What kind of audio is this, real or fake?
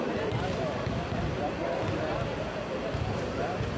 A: real